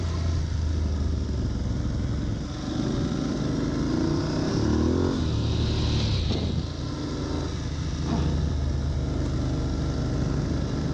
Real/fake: real